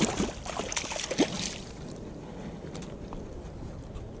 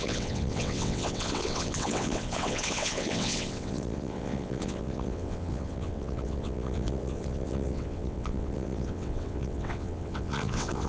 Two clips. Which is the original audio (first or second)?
first